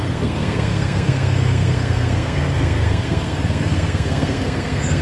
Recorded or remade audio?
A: remade